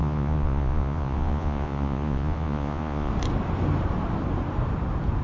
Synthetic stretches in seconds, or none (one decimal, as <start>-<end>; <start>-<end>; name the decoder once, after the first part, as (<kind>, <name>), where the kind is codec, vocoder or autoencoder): 0.0-3.1 (vocoder, Vocos)